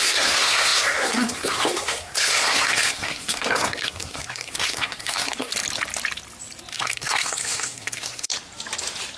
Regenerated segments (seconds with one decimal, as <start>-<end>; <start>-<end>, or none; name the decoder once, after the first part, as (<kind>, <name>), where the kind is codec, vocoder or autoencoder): 0.0-5.5 (codec, SNAC); 6.7-8.3